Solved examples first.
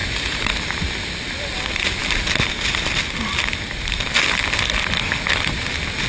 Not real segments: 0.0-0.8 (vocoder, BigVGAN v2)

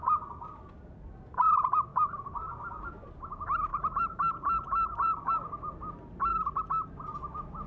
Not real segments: 1.9-2.5 (vocoder, BigVGAN v2); 3.7-5.3

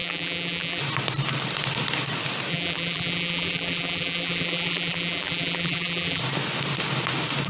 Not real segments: 0.0-0.8 (vocoder, BigVGAN v2); 2.5-6.2